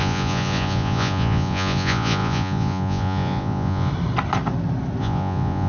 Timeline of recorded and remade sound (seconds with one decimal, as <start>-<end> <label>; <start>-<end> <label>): 0.0-3.9 remade; 3.9-5.0 recorded; 5.0-5.7 remade